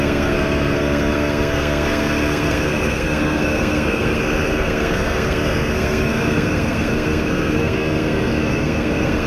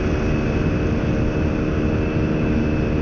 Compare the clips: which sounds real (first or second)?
second